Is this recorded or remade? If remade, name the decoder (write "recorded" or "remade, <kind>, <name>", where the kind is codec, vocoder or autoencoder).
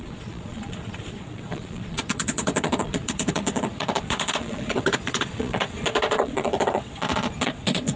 remade, vocoder, Vocos